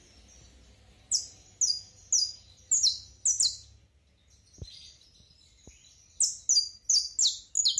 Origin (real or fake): real